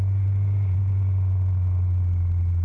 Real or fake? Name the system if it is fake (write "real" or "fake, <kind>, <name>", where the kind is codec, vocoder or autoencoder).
real